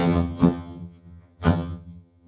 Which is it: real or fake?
fake